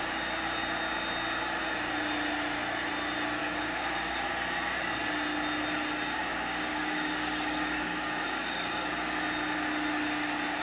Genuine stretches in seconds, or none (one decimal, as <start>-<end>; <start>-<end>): 0.0-3.4; 4.3-6.2; 8.9-10.6